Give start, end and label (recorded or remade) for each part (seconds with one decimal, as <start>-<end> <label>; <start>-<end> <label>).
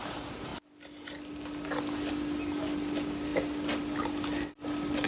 0.0-5.1 recorded